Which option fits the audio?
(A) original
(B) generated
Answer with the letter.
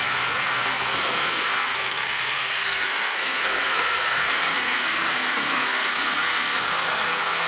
B